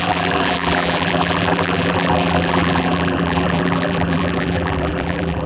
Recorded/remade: remade